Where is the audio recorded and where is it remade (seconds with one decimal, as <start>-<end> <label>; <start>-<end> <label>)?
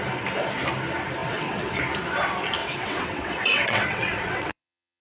0.0-1.2 recorded; 1.2-1.8 remade; 1.8-2.6 recorded; 2.6-5.0 remade